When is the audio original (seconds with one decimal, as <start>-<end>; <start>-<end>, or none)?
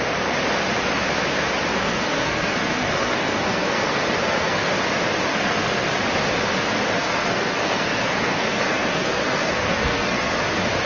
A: 0.0-1.7; 4.7-5.3; 6.0-7.0; 10.4-10.9